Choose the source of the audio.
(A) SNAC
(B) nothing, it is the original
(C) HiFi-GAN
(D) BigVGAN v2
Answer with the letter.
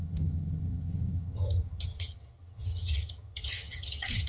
C